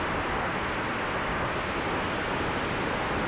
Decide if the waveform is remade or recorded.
recorded